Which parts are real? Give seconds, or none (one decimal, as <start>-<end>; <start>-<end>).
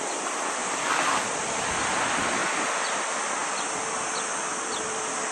0.0-0.6; 1.4-3.4; 4.7-5.3